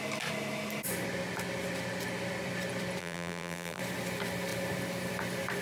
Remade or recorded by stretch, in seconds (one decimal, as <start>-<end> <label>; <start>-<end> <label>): 0.0-3.0 recorded; 3.0-3.8 remade; 3.8-5.6 recorded